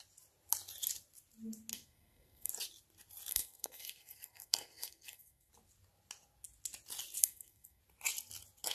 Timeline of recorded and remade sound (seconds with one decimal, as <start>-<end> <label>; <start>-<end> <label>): 0.0-1.7 recorded; 1.7-2.5 remade; 2.5-3.3 recorded; 3.3-5.5 remade; 5.5-7.2 recorded; 7.2-7.8 remade; 7.8-8.7 recorded